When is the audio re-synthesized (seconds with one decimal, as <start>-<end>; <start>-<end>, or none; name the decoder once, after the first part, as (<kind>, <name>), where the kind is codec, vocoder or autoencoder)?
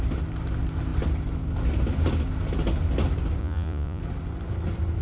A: 3.4-4.0 (vocoder, Vocos)